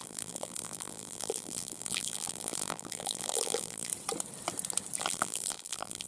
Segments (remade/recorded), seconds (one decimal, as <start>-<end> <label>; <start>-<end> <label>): 0.0-3.9 remade; 3.9-5.0 recorded; 5.0-6.1 remade

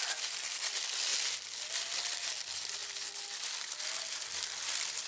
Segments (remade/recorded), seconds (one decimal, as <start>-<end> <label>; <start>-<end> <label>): 0.0-5.1 recorded

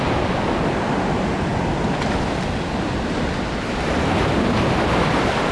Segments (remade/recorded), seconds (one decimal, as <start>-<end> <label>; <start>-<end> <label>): 0.0-5.5 recorded

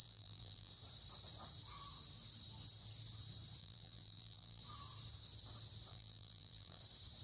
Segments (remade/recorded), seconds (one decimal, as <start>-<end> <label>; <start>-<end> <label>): 0.0-0.7 remade; 0.7-3.6 recorded; 3.6-4.6 remade; 4.6-5.9 recorded; 5.9-6.8 remade; 6.8-7.2 recorded

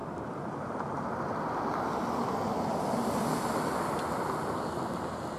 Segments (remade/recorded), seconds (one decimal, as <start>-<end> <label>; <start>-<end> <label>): 0.0-1.0 remade; 1.0-5.4 recorded